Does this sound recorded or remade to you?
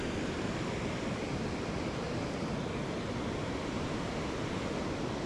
recorded